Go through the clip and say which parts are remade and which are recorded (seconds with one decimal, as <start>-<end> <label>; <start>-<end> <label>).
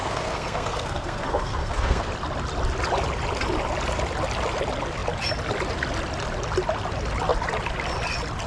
0.0-2.1 remade; 2.1-8.5 recorded